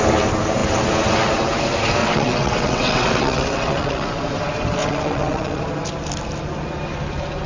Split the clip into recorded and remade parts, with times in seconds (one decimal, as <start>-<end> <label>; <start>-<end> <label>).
0.0-2.0 recorded; 2.0-4.1 remade; 4.1-4.8 recorded; 4.8-5.6 remade; 5.6-7.5 recorded